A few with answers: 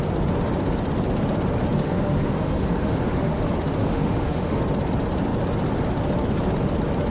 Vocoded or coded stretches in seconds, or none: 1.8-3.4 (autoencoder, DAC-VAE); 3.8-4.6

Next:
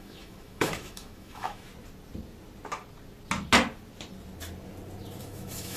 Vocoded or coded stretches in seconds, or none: 0.0-1.7 (autoencoder, DAC-VAE); 5.2-5.8

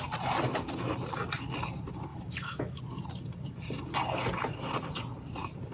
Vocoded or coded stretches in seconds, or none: 2.1-2.8 (autoencoder, DAC-VAE)